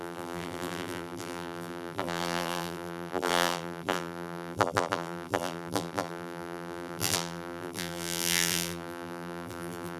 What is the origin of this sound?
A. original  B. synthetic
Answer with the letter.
B